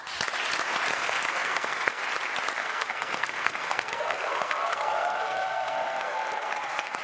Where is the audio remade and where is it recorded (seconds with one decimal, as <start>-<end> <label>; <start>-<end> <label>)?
0.0-0.9 recorded; 0.9-2.0 remade; 2.0-2.6 recorded; 2.6-7.0 remade